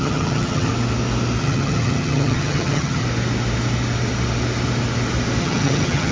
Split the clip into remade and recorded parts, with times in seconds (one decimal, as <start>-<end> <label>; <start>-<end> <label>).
0.0-0.7 remade; 0.7-1.4 recorded; 1.4-3.0 remade; 3.0-5.4 recorded; 5.4-6.1 remade